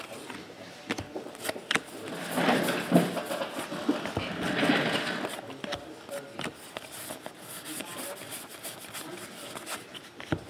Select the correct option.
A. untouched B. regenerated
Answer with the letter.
A